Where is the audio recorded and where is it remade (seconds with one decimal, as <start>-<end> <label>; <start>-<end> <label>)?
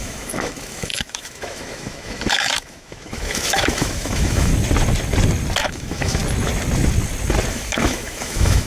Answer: 0.0-4.5 remade; 4.5-5.6 recorded; 5.6-6.2 remade; 6.2-7.5 recorded; 7.5-8.7 remade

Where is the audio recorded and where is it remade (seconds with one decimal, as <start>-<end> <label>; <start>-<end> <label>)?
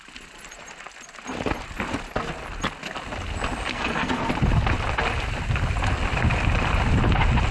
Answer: 0.0-3.7 recorded; 3.7-4.3 remade; 4.3-7.5 recorded